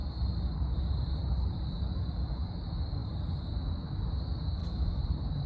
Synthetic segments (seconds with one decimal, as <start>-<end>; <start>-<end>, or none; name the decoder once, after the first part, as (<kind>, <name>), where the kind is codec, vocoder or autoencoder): 0.0-1.8 (vocoder, BigVGAN v2); 3.0-3.8; 4.6-5.5